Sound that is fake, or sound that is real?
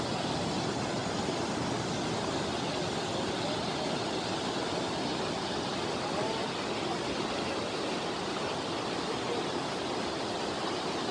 real